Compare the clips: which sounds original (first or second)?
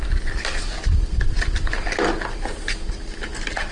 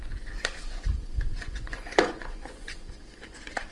first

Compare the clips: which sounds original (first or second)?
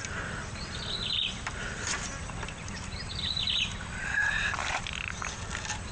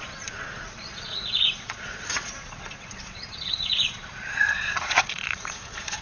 first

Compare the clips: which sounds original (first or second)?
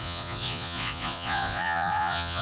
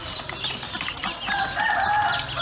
second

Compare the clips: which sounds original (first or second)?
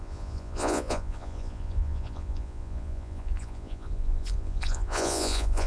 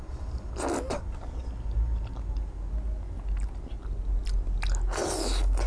second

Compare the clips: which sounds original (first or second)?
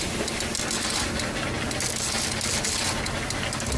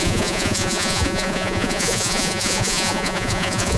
first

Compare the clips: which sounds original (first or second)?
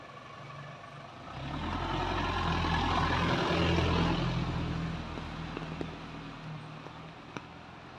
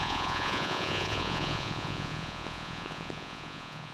first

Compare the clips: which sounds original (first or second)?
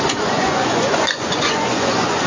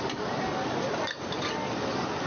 second